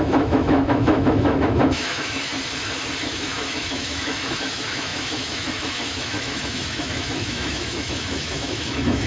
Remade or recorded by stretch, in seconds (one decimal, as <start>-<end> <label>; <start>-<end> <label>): 0.0-2.3 remade; 2.3-3.1 recorded; 3.1-9.1 remade